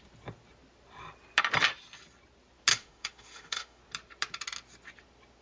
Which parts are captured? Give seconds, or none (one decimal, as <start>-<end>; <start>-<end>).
0.0-2.7; 3.8-5.4